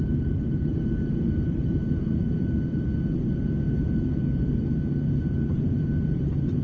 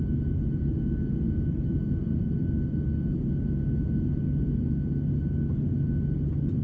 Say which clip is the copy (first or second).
first